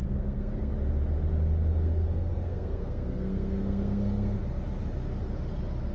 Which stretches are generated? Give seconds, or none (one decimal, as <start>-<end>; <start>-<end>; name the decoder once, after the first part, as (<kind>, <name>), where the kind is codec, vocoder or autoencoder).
0.0-0.7 (codec, SNAC); 1.7-4.4